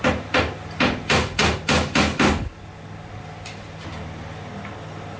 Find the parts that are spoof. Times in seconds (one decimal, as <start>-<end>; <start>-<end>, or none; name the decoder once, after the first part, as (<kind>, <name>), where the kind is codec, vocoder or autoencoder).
none